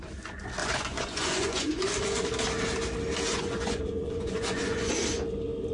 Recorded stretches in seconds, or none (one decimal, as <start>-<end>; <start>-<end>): 0.0-0.6; 1.8-3.3; 4.9-5.7